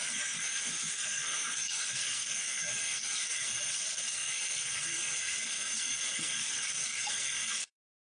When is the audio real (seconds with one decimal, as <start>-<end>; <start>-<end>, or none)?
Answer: none

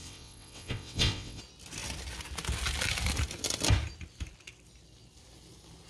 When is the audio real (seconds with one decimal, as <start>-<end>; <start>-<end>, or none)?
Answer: 1.4-5.9

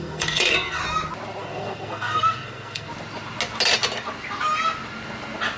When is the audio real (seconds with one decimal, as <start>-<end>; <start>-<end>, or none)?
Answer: 0.8-1.4; 2.9-5.6

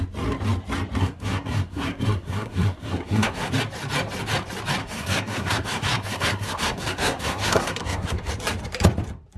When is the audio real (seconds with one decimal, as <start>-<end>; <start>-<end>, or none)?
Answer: 0.0-1.0; 3.5-4.8; 8.3-9.4